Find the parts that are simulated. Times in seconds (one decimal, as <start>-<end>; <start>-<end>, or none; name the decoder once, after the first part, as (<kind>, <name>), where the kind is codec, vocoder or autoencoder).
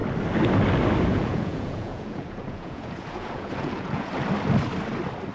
1.1-4.1 (vocoder, Vocos)